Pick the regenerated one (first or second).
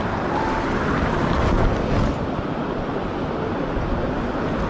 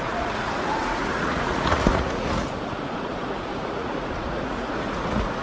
second